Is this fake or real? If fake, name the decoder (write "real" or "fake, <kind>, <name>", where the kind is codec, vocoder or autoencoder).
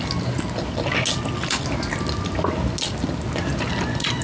real